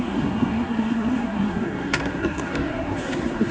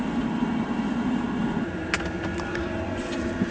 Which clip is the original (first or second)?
second